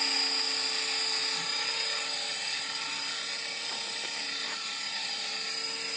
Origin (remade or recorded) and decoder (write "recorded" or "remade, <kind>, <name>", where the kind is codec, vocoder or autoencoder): recorded